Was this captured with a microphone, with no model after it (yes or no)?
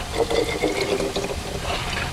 yes